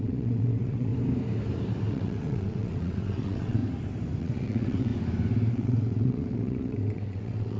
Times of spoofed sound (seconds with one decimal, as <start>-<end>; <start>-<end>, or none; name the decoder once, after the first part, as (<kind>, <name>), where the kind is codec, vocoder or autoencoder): 0.0-0.9 (vocoder, WaveNeXt); 1.9-3.6; 4.2-4.9; 5.5-7.6